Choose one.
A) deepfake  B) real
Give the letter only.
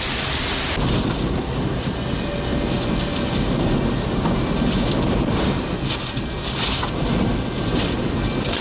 B